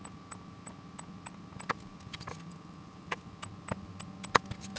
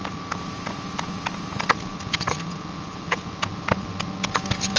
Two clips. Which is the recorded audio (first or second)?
first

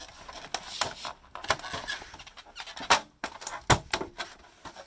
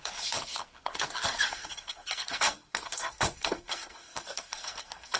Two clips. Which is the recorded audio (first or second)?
first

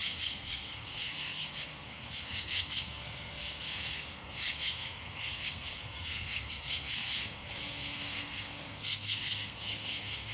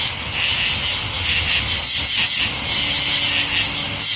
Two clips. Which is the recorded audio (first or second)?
second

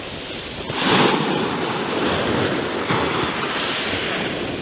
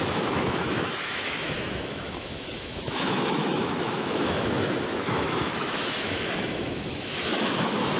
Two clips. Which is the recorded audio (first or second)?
first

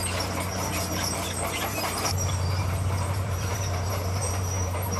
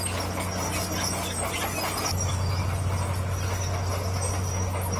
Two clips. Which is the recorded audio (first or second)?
second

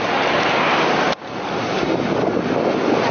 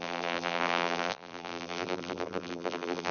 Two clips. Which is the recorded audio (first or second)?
first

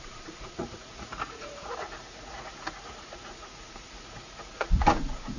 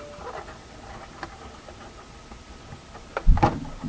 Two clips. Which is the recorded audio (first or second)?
second